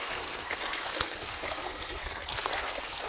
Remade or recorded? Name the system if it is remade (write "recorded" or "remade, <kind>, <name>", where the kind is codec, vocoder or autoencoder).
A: remade, codec, SNAC